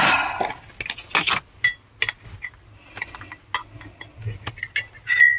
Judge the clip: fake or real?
real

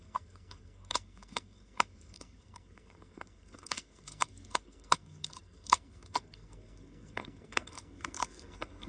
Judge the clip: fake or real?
fake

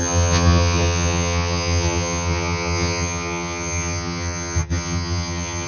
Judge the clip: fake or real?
fake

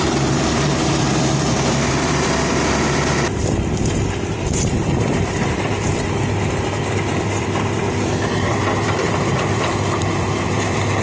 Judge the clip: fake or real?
fake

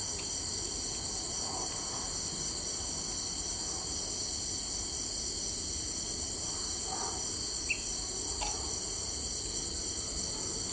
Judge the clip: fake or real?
real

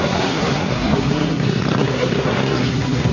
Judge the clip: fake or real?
fake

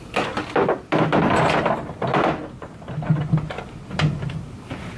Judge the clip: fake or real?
real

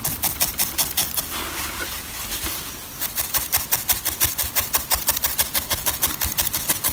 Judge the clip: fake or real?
real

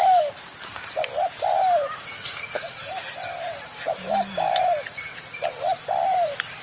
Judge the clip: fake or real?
fake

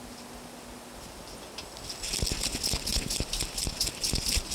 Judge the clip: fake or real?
real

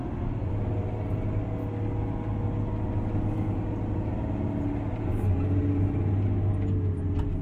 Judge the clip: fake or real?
real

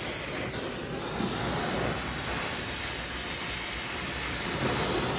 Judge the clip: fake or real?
real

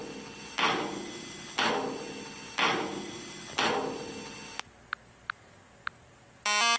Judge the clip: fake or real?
real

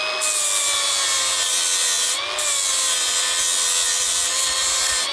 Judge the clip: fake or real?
real